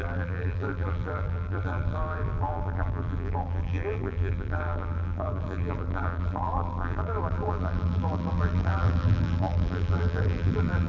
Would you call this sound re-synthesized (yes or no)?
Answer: yes